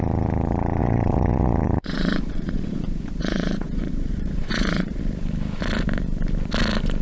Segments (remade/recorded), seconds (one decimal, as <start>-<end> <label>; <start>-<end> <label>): 0.0-0.8 recorded; 0.8-5.0 remade; 5.0-7.0 recorded